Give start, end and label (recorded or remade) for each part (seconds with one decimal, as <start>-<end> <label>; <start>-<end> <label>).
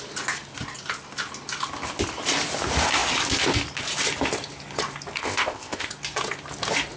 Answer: 0.0-5.2 recorded; 5.2-5.9 remade; 5.9-7.0 recorded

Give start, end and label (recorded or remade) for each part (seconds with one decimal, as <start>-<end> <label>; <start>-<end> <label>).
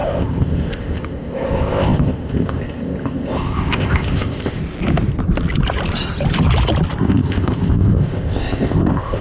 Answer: 0.0-4.6 remade; 4.6-7.0 recorded; 7.0-9.2 remade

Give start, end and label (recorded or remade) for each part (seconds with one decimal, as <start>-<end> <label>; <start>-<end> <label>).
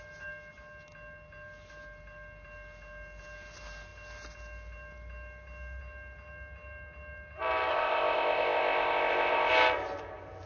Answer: 0.0-7.7 recorded; 7.7-9.5 remade; 9.5-10.5 recorded